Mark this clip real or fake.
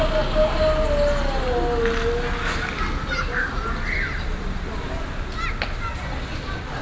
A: real